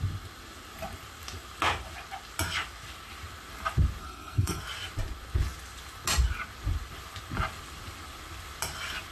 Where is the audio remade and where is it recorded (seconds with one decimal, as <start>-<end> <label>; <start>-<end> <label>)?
0.0-4.0 recorded; 4.0-4.6 remade; 4.6-9.1 recorded